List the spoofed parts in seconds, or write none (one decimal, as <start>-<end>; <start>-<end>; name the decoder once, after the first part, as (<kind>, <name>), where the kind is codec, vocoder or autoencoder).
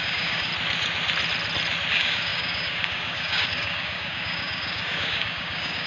0.0-0.5 (codec, DAC); 1.9-5.9